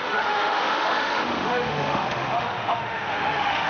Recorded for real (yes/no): no